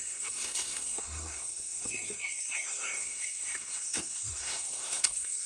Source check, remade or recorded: remade